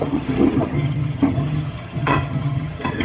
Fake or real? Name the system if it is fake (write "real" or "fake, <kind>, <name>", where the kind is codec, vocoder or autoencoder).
fake, vocoder, HiFi-GAN